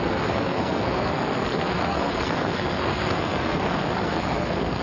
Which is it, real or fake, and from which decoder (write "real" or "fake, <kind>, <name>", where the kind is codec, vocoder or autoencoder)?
fake, codec, SNAC